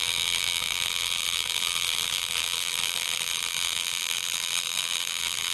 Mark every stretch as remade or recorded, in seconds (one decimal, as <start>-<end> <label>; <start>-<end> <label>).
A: 0.0-5.5 remade